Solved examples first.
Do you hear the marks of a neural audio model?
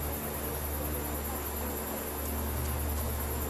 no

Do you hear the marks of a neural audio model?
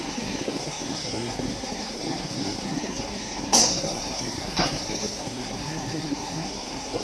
yes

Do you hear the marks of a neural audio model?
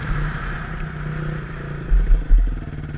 no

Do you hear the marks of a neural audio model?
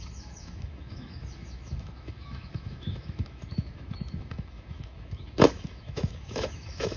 yes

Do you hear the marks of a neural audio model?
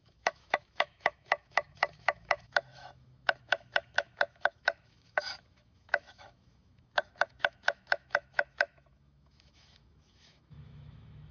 yes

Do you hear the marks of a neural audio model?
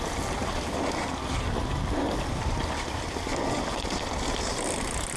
no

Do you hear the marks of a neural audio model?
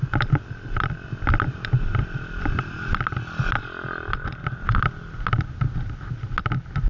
no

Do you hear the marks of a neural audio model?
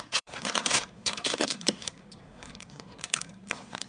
yes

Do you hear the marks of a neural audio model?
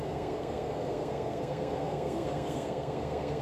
yes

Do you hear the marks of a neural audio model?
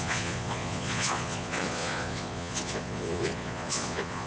yes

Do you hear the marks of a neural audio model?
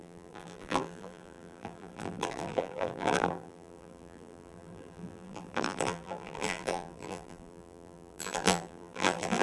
yes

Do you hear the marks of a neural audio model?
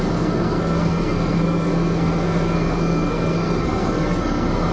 yes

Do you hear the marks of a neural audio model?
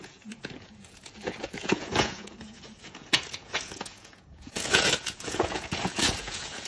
yes